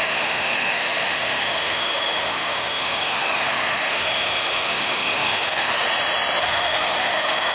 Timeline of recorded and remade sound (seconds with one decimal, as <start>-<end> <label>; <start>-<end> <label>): 0.0-5.7 remade; 5.7-6.4 recorded; 6.4-7.5 remade